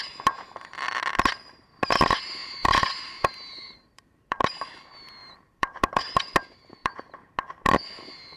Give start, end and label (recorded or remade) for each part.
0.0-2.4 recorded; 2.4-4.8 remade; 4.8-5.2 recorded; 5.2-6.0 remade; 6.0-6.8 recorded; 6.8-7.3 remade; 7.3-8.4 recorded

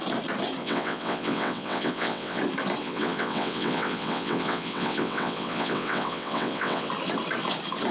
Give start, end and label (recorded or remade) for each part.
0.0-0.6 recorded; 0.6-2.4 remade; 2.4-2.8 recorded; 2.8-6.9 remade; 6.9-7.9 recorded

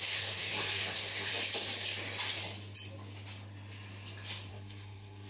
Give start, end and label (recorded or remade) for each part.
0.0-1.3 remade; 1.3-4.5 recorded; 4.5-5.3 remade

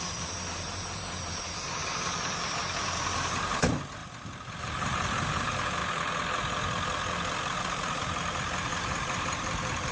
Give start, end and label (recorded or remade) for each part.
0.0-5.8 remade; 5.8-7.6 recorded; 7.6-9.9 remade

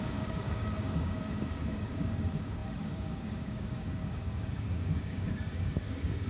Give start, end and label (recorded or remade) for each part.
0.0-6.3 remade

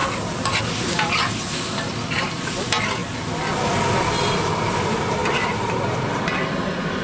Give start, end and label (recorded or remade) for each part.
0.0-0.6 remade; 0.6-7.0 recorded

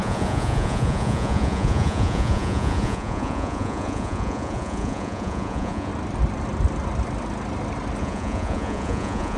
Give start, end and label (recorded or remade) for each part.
0.0-5.9 remade; 5.9-8.0 recorded; 8.0-9.4 remade

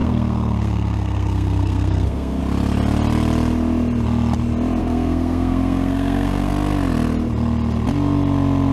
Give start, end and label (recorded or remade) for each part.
0.0-2.4 remade; 2.4-4.8 recorded; 4.8-6.5 remade; 6.5-8.7 recorded